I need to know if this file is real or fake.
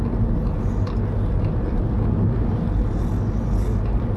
real